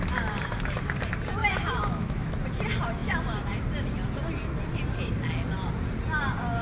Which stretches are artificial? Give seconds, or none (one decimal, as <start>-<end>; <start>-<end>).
1.4-2.3